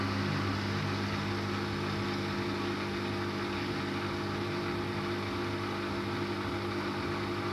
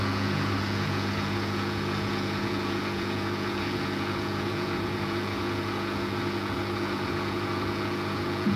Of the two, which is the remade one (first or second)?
second